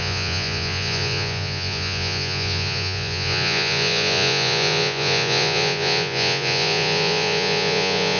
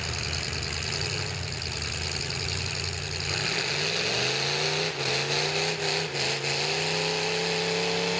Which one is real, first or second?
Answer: second